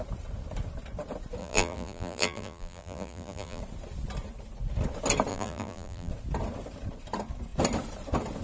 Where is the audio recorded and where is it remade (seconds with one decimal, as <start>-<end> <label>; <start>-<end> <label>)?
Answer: 0.0-1.4 recorded; 1.4-3.6 remade; 3.6-5.3 recorded; 5.3-6.1 remade; 6.1-8.4 recorded